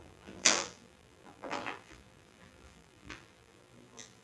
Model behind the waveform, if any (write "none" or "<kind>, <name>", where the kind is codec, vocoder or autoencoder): vocoder, BigVGAN v2